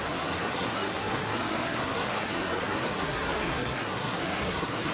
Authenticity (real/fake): fake